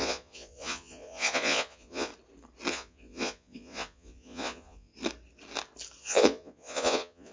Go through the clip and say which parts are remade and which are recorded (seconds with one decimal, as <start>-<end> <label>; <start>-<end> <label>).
0.0-2.1 remade; 2.1-2.7 recorded; 2.7-4.9 remade; 4.9-6.0 recorded; 6.0-7.3 remade